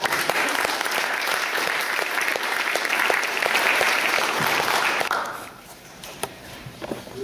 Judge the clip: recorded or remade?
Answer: remade